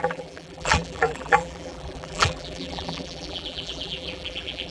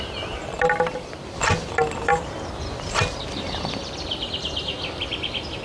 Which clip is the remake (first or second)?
first